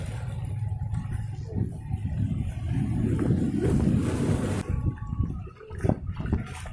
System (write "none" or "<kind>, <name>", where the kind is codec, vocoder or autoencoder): none